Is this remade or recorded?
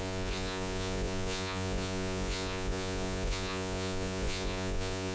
remade